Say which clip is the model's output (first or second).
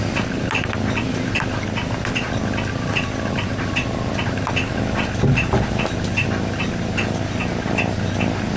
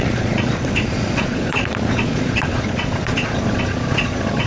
second